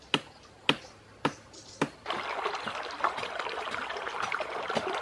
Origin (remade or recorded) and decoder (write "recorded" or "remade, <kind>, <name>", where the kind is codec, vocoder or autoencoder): recorded